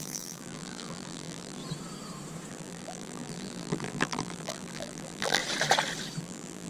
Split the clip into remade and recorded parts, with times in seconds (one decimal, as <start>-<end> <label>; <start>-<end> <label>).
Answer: 0.0-1.6 remade; 1.6-2.5 recorded; 2.5-5.4 remade; 5.4-6.2 recorded; 6.2-6.7 remade